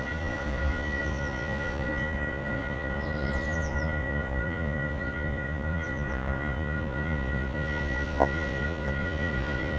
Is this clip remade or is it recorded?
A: remade